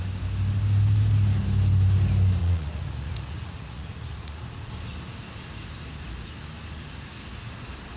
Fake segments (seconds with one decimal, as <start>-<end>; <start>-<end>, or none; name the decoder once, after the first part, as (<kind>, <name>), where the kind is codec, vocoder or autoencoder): 2.4-4.7 (vocoder, Vocos)